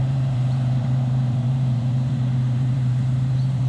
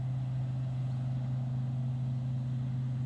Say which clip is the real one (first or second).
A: second